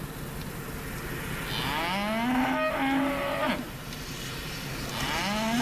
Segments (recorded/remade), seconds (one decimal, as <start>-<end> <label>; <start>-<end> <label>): 0.0-3.4 recorded; 3.4-4.2 remade; 4.2-5.6 recorded